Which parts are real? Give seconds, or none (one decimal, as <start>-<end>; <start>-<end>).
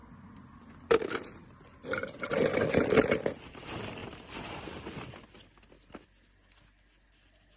0.0-7.6